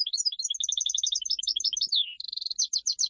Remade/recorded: recorded